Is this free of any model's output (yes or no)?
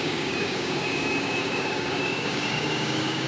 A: no